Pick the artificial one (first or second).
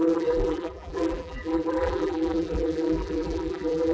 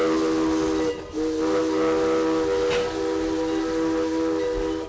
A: first